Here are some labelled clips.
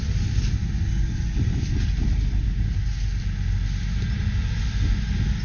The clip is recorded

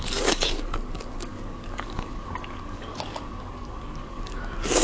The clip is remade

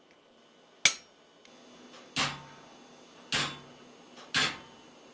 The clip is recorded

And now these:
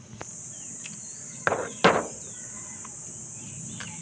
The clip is recorded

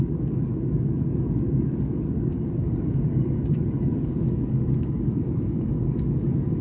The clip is remade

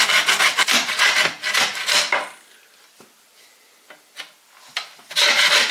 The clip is recorded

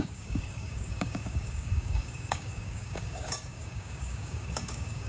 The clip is remade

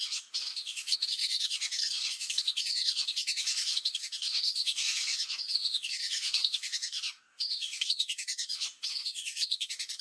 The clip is remade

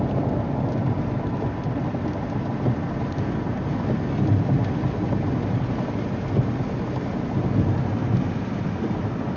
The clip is recorded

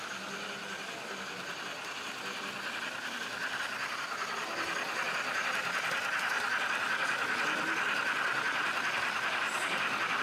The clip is recorded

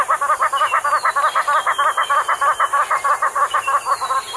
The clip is recorded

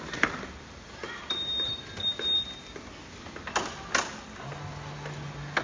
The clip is recorded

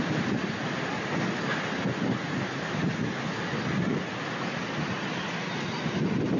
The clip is recorded